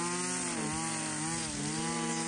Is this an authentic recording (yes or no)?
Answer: yes